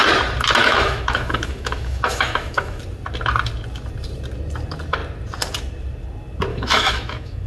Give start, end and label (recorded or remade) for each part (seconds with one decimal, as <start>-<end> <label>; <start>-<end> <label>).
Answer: 0.0-0.6 recorded; 0.6-2.8 remade; 2.8-6.5 recorded; 6.5-7.5 remade